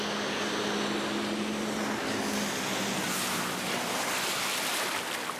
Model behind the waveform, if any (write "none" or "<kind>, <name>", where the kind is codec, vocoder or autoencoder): none